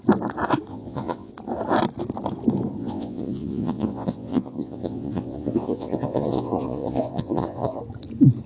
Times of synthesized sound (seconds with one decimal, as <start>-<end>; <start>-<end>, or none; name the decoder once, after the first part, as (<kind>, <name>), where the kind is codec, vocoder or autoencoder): 0.7-1.3 (vocoder, Vocos); 2.8-7.8